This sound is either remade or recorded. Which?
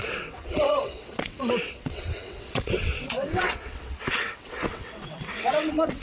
remade